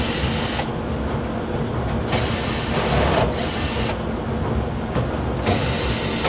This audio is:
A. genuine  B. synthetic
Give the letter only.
A